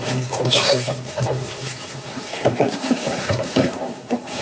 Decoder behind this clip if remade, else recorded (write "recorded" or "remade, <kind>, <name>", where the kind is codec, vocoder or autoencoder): remade, codec, SNAC